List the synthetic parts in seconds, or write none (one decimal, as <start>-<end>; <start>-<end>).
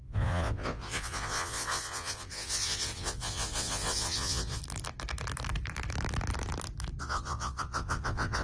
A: 0.0-4.6; 7.0-8.4